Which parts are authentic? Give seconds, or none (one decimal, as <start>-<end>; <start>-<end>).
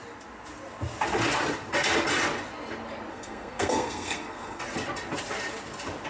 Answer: 0.0-3.1; 4.6-6.1